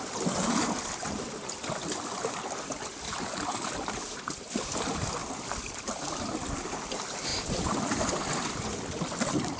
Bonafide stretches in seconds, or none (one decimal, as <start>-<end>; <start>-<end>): 0.0-5.2; 6.0-7.3; 8.5-9.6